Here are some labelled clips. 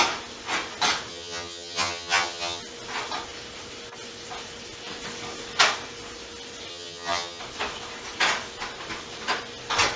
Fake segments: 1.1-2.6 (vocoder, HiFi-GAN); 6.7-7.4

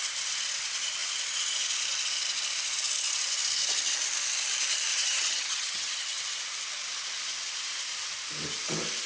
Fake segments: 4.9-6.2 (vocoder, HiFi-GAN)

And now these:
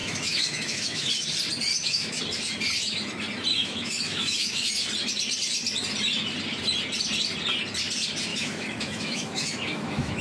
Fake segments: 0.0-1.1 (autoencoder, DAC-VAE); 1.7-2.2; 3.5-4.7; 8.3-10.2

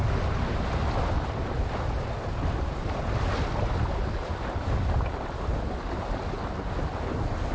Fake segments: none

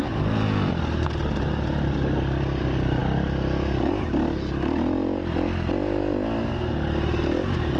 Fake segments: none